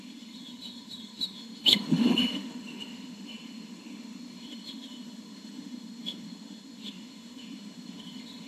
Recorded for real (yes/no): no